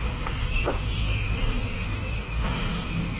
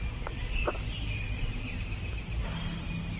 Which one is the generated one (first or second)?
first